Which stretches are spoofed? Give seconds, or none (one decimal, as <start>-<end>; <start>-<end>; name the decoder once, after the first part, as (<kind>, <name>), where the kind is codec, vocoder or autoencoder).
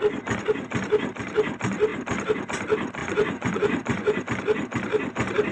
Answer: 3.0-4.2 (vocoder, Vocos)